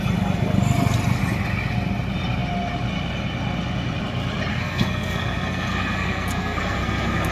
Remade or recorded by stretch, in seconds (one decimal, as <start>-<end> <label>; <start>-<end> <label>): 0.0-4.5 recorded; 4.5-7.3 remade